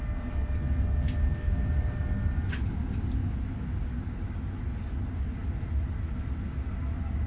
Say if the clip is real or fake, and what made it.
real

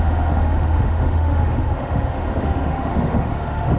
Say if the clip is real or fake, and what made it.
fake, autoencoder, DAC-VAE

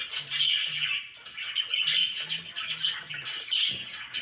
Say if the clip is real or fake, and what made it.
real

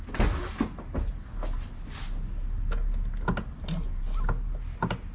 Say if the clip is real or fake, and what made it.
real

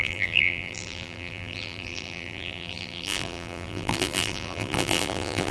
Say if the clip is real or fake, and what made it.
fake, vocoder, BigVGAN v2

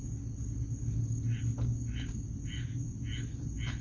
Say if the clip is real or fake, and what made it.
real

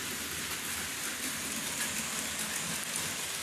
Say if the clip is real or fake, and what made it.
real